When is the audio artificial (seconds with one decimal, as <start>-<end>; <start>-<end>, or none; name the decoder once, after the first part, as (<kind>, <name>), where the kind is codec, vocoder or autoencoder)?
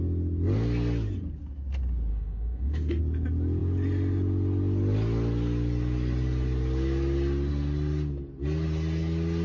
2.1-3.0 (autoencoder, DAC-VAE)